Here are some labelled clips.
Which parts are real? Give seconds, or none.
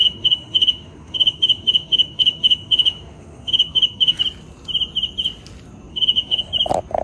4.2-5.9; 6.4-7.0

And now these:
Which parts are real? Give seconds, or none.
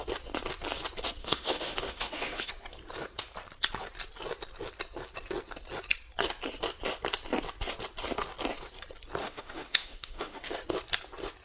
0.0-1.2; 2.5-9.2; 10.5-11.4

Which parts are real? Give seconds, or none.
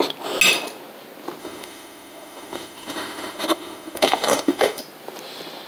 0.0-1.4; 4.8-5.7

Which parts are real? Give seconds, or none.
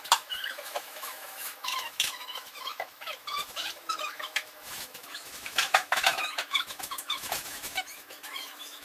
none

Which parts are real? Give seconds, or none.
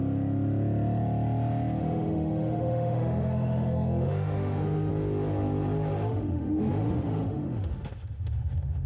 0.0-1.8; 4.9-6.1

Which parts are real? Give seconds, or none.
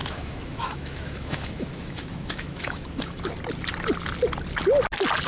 3.2-5.3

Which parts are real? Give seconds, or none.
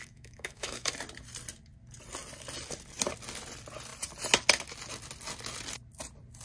0.9-6.4